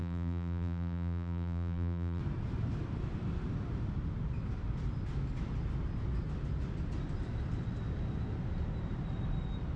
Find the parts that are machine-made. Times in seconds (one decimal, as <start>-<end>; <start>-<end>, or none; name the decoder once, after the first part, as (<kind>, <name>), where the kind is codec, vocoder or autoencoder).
0.0-2.2 (vocoder, BigVGAN v2)